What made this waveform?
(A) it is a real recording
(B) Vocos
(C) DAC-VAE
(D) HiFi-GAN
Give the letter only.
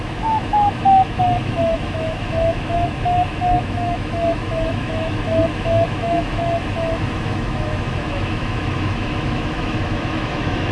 C